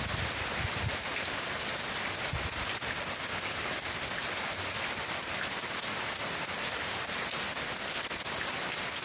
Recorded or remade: recorded